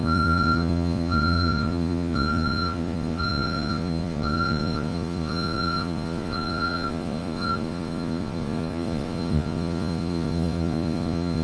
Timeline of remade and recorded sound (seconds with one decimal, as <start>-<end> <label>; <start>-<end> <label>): 0.0-11.4 remade